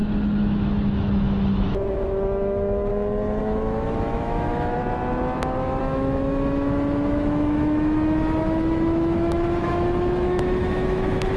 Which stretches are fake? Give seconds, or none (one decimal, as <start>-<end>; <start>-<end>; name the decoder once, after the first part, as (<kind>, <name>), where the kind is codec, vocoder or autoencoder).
0.0-2.9 (autoencoder, DAC-VAE); 3.4-4.8; 5.8-11.4